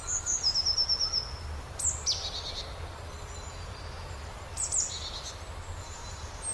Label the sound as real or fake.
real